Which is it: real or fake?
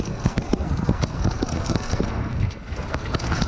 fake